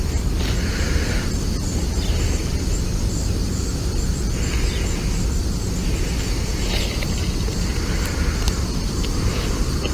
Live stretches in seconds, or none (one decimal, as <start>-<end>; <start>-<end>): 0.0-9.9